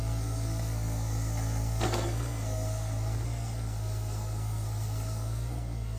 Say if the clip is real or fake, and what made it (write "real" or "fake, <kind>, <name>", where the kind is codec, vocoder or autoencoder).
fake, codec, SNAC